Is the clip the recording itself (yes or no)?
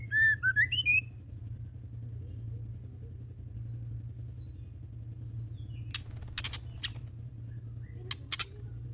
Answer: yes